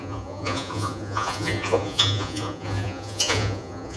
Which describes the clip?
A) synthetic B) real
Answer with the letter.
A